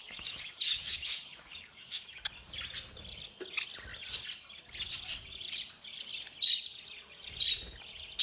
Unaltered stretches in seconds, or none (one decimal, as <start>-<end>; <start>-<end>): 2.3-8.2